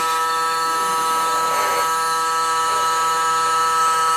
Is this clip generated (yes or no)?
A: yes